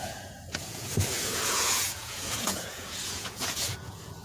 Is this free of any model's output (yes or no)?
no